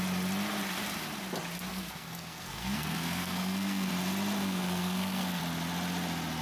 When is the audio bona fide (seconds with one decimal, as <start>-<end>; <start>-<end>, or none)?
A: 0.0-1.7; 3.9-4.4; 5.4-6.4